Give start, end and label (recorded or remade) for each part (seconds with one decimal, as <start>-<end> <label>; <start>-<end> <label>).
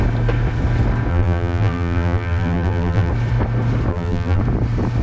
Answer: 0.0-1.1 recorded; 1.1-3.1 remade; 3.1-3.9 recorded; 3.9-4.4 remade; 4.4-5.0 recorded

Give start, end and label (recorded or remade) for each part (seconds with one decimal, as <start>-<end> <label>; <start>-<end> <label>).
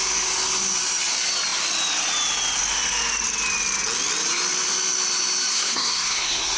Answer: 0.0-5.5 recorded; 5.5-6.6 remade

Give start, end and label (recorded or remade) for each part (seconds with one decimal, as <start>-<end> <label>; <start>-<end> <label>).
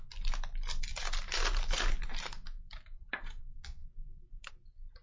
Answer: 0.0-0.9 recorded; 0.9-3.4 remade; 3.4-3.8 recorded; 3.8-4.5 remade; 4.5-5.0 recorded